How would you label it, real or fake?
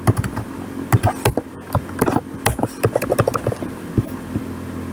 real